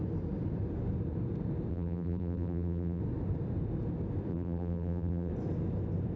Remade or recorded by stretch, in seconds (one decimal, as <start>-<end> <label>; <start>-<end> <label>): 0.0-1.7 recorded; 1.7-3.0 remade; 3.0-4.3 recorded; 4.3-5.3 remade; 5.3-6.2 recorded